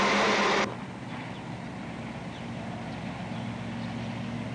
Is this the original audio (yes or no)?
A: yes